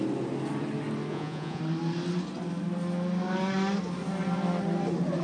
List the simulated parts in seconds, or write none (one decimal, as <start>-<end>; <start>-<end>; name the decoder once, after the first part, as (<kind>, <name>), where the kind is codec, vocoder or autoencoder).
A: 1.1-1.6 (vocoder, Vocos)